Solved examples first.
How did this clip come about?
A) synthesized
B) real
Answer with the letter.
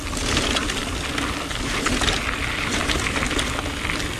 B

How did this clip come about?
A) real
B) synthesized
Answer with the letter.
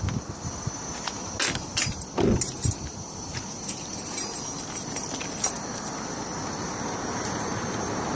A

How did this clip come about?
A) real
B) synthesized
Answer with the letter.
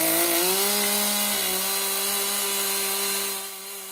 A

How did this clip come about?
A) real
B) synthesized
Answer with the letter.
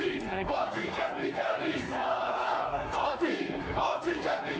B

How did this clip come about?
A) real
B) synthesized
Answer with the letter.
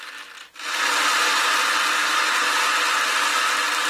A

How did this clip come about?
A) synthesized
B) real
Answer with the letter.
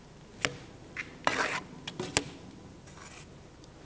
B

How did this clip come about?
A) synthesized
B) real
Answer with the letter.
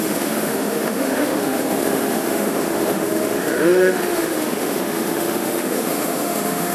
A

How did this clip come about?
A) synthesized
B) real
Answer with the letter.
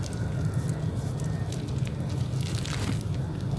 B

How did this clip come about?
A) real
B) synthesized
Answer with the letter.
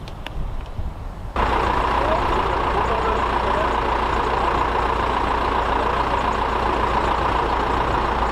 A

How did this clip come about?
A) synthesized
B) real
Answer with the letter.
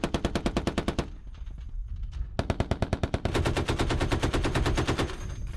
B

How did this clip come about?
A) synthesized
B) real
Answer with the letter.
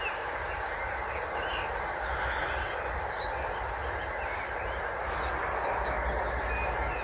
B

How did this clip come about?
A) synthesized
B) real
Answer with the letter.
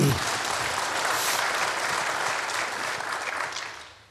A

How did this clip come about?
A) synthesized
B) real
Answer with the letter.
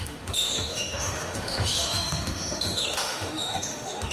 A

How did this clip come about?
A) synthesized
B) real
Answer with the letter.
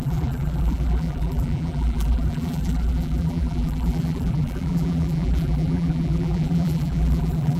A